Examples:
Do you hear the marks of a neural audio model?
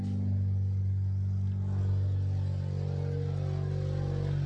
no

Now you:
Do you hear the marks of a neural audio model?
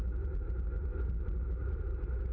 no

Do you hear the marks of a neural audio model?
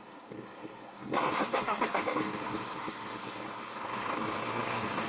yes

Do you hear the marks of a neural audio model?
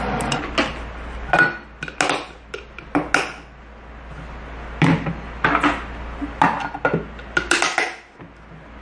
no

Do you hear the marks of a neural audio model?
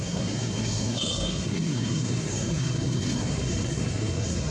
yes